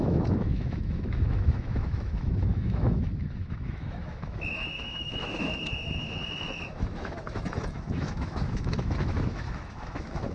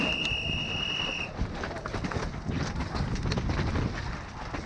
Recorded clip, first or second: second